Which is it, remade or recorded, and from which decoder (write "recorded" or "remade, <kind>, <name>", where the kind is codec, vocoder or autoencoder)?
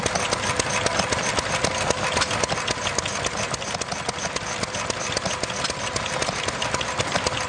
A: recorded